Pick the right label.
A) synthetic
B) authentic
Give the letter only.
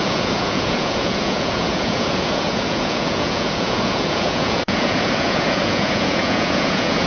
A